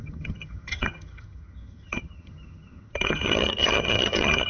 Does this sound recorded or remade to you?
remade